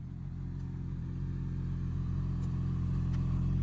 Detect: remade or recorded recorded